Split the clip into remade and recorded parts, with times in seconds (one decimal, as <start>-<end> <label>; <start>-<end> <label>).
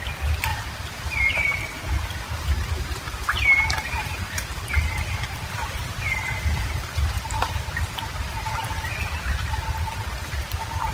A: 0.0-10.9 recorded